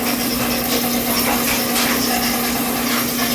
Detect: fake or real real